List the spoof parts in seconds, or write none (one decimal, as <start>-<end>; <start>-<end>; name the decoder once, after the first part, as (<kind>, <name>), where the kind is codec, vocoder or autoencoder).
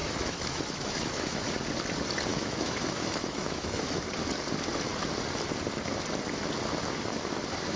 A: 0.0-1.5 (autoencoder, DAC-VAE); 2.3-4.0